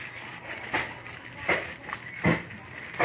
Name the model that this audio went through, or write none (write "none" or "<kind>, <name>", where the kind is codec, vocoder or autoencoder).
none